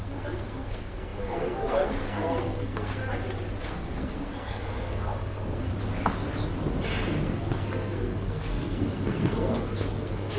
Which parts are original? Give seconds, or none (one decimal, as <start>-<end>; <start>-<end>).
3.0-3.6; 5.7-7.2